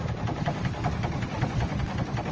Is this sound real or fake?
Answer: real